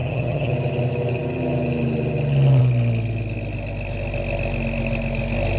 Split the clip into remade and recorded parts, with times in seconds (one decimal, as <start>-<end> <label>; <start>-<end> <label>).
0.0-0.5 remade; 0.5-5.6 recorded